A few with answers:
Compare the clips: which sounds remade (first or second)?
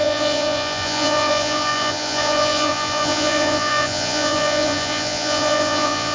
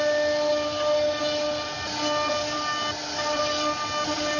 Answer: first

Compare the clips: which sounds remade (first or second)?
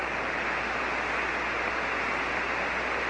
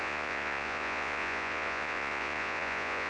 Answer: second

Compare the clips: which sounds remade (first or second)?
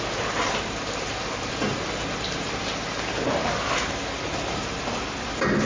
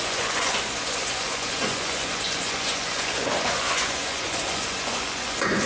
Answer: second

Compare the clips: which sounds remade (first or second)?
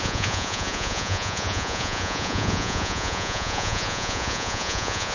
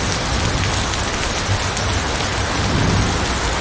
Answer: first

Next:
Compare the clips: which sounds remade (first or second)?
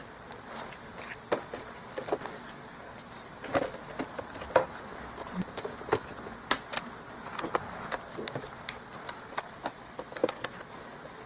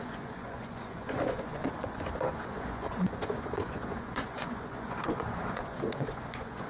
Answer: second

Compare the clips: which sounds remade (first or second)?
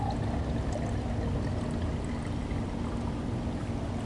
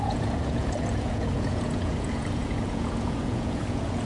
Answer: second